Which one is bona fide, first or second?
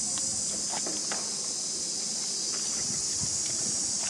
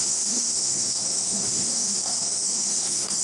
first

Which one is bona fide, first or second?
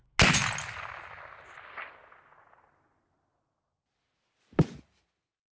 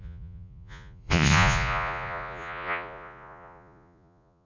first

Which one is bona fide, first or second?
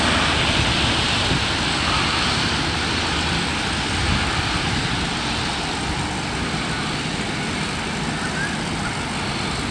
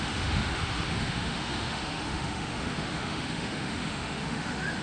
first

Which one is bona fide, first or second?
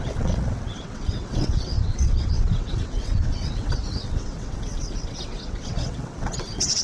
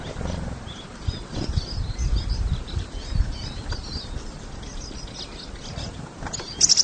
second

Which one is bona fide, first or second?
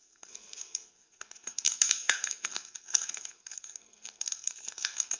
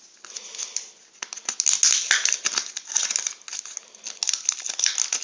second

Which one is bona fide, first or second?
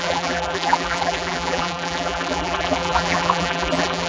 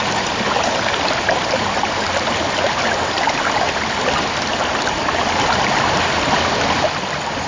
second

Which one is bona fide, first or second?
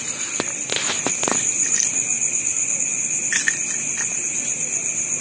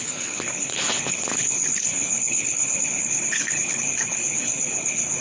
first